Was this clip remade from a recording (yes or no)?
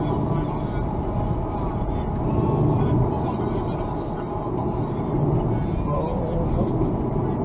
no